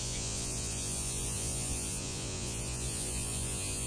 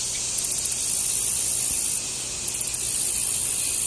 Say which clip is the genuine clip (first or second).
second